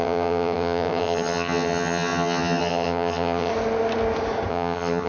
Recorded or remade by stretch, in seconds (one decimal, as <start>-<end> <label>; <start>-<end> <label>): 0.0-3.5 remade; 3.5-4.5 recorded; 4.5-5.1 remade